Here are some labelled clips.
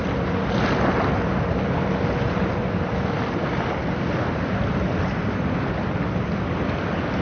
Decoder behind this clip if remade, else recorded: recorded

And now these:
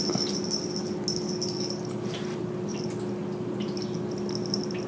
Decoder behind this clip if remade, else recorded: recorded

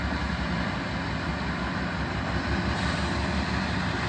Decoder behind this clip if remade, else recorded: recorded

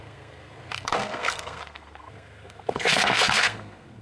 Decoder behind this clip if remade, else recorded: remade, codec, SNAC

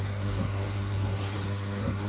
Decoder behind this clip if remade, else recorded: remade, codec, SNAC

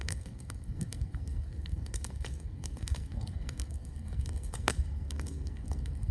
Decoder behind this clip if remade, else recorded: remade, codec, SNAC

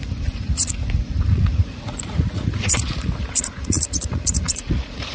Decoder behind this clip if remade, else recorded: remade, vocoder, Vocos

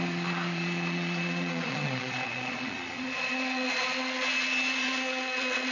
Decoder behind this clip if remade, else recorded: remade, vocoder, Vocos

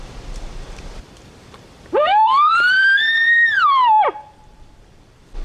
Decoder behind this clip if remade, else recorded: remade, vocoder, BigVGAN v2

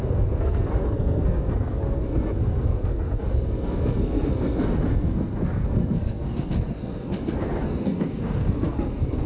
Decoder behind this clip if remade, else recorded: remade, codec, SNAC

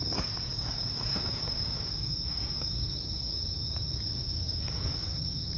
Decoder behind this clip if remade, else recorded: remade, codec, DAC